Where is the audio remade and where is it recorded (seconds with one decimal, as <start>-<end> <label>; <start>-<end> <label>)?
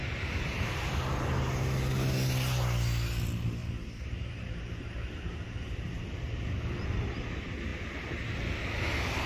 0.0-0.7 remade; 0.7-3.6 recorded; 3.6-6.4 remade; 6.4-9.3 recorded